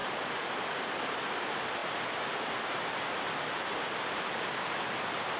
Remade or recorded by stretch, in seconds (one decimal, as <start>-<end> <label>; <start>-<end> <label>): 0.0-5.4 recorded